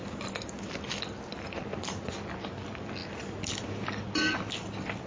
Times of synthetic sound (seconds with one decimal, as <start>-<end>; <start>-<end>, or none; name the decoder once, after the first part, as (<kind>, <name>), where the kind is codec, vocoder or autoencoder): none